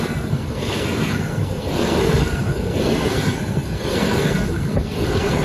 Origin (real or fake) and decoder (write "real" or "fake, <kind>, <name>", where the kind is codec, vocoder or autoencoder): fake, codec, SNAC